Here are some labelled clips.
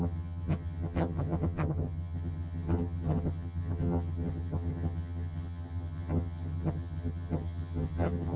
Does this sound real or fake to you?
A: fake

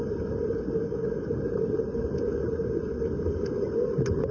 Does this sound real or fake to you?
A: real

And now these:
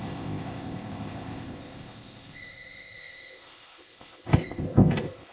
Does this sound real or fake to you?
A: fake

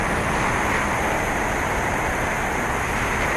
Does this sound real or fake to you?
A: real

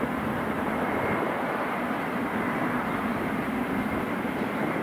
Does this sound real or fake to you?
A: fake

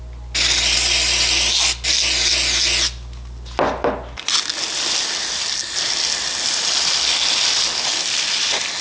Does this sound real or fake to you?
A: real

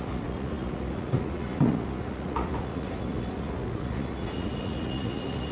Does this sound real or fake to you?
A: fake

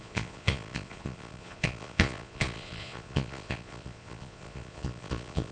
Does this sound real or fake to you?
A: fake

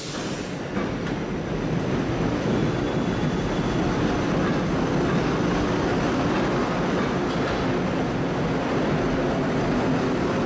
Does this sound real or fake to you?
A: real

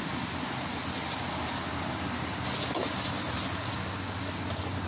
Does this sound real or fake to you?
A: real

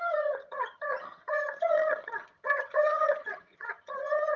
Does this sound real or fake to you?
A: fake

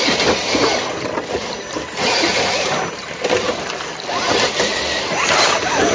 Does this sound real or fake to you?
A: real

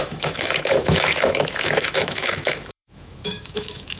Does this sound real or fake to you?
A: fake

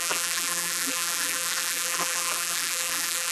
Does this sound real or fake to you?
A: fake